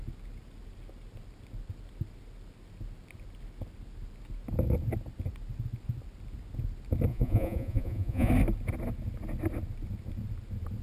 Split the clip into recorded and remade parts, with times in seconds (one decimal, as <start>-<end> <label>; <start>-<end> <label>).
0.0-7.1 recorded; 7.1-8.3 remade; 8.3-10.8 recorded